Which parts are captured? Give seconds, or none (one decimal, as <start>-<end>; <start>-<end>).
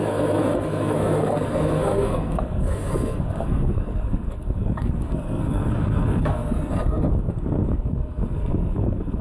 none